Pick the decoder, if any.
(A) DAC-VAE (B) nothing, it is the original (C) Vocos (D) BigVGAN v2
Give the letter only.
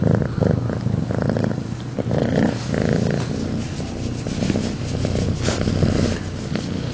B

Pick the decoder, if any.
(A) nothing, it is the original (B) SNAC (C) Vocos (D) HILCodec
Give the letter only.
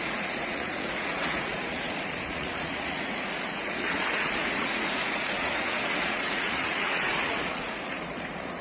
C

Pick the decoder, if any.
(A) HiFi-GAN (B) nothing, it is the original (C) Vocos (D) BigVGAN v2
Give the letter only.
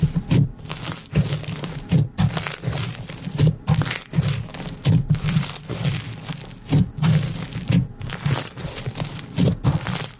B